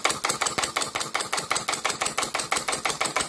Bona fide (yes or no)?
yes